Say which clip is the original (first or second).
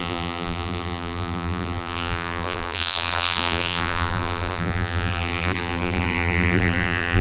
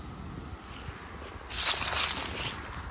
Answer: second